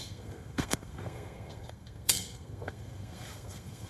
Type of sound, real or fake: fake